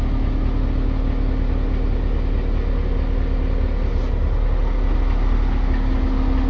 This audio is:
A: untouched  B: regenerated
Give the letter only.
A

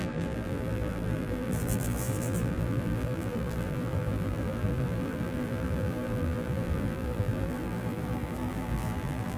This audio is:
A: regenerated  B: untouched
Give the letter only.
A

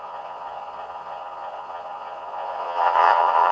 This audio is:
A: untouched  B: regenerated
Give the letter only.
B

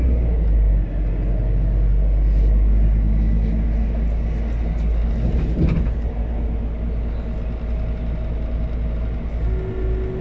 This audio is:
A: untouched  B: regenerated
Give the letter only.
A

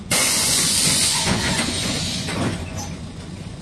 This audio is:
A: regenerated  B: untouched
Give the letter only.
A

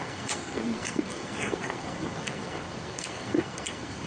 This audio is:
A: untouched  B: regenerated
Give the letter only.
B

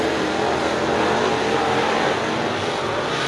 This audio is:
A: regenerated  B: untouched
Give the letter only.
B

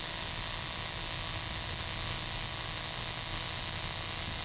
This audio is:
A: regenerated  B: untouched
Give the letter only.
B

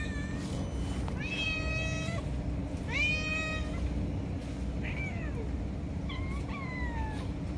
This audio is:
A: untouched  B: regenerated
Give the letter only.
A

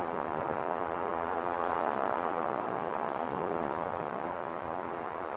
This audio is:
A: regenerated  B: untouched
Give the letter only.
A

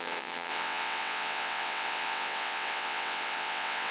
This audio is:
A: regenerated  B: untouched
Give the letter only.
A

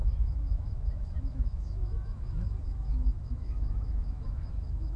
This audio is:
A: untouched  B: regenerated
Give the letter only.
B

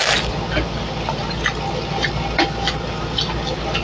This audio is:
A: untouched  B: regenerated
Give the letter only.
A